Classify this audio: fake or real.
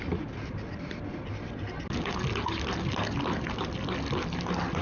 real